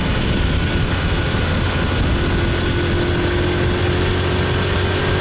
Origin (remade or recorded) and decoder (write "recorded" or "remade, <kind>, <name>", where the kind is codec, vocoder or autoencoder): recorded